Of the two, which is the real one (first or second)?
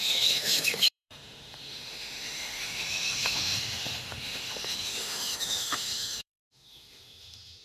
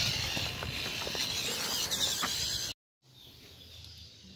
second